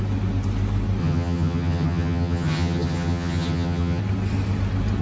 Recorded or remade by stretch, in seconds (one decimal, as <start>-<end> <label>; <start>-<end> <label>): 0.0-1.0 recorded; 1.0-4.0 remade; 4.0-5.0 recorded